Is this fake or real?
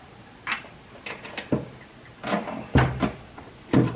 real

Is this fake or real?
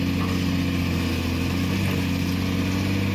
real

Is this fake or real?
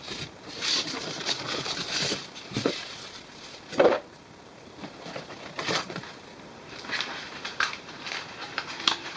fake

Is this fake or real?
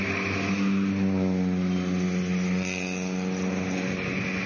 real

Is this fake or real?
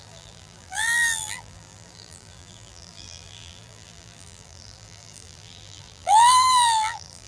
fake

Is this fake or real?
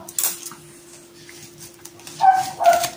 real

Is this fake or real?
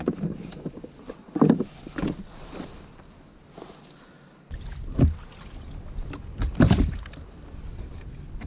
real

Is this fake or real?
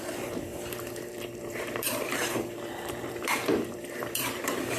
fake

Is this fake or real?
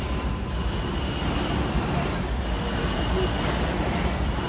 real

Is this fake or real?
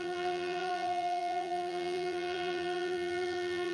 fake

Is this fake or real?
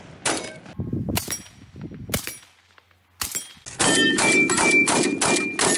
real